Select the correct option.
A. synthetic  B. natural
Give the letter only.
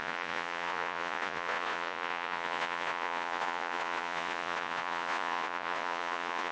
A